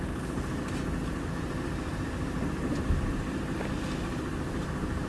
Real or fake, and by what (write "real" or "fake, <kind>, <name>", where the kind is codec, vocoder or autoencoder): real